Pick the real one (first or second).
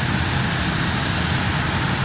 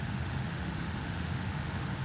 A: first